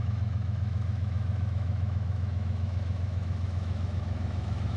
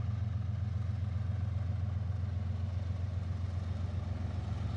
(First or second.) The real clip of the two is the second